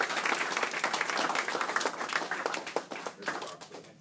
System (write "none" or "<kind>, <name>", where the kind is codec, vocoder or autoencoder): none